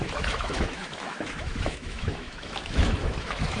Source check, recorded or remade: remade